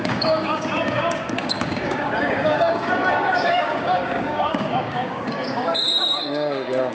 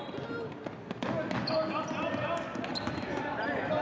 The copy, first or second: first